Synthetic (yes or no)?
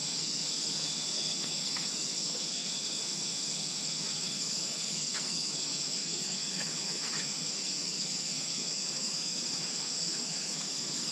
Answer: yes